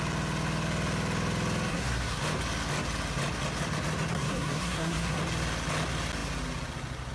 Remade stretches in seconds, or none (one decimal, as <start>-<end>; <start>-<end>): 1.7-2.2; 4.1-5.2